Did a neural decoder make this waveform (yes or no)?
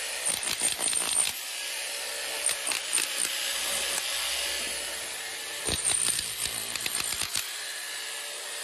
no